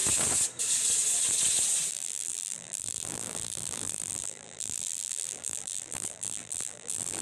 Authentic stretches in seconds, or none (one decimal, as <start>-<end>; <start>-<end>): 0.0-1.9